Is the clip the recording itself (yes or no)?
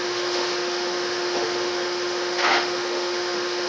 no